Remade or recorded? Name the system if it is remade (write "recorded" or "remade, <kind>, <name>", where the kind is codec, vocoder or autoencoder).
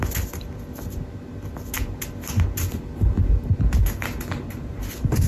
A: recorded